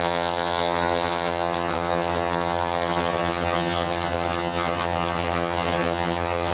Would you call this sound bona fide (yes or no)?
no